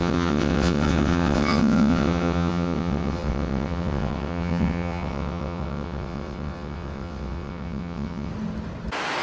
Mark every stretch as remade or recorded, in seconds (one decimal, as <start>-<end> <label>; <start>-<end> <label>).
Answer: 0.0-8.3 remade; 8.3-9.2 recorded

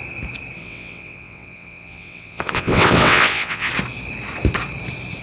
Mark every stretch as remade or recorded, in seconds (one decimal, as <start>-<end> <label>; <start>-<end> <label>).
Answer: 0.0-0.6 recorded; 0.6-3.7 remade; 3.7-5.2 recorded

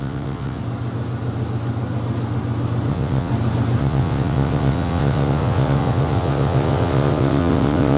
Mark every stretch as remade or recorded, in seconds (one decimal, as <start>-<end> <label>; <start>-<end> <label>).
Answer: 0.0-0.6 remade; 0.6-2.9 recorded; 2.9-3.3 remade; 3.3-3.8 recorded; 3.8-8.0 remade

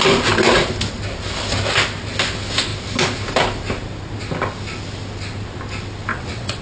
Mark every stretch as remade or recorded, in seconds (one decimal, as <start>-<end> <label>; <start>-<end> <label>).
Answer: 0.0-6.1 recorded; 6.1-6.6 remade

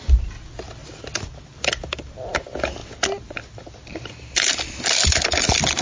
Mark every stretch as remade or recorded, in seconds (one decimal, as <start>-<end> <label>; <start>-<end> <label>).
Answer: 0.0-5.8 recorded

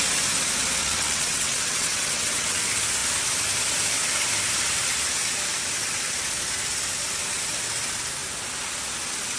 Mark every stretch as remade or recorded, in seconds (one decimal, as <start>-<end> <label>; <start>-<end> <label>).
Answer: 0.0-0.8 recorded; 0.8-2.6 remade; 2.6-9.4 recorded

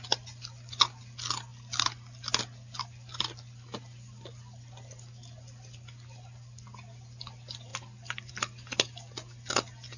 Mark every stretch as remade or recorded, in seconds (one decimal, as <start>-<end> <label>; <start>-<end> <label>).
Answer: 0.0-10.0 recorded